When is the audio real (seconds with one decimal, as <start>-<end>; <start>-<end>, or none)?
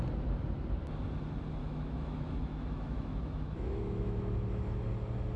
0.0-1.6; 4.8-5.4